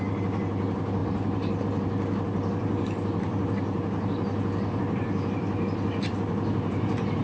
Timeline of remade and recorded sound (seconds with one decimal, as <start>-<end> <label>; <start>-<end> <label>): 0.0-7.2 recorded